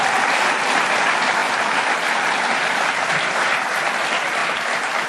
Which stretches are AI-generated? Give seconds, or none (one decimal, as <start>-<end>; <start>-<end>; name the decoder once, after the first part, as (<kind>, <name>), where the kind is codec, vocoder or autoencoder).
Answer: 0.0-1.4 (vocoder, BigVGAN v2); 3.1-4.4